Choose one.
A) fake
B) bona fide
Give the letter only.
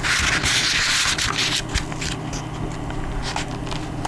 B